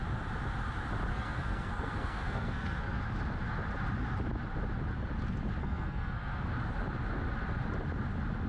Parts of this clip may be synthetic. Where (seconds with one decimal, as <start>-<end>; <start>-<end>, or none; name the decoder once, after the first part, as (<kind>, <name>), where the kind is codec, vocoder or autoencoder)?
1.1-3.0 (codec, SNAC); 5.6-6.5